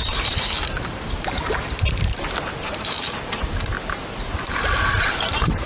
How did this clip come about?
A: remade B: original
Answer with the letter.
A